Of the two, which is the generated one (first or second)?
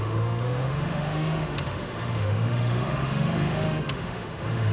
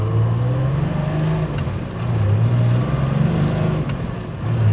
first